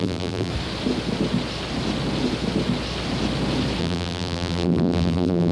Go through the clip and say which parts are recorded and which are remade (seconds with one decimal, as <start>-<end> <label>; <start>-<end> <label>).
0.0-0.5 remade; 0.5-3.8 recorded; 3.8-5.5 remade